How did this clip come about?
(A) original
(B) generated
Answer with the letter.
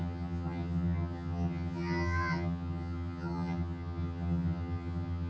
B